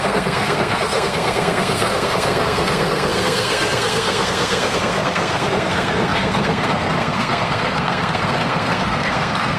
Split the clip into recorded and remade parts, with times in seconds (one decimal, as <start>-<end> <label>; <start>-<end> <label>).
0.0-9.6 remade